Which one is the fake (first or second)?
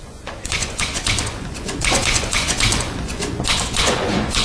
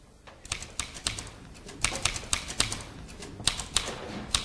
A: first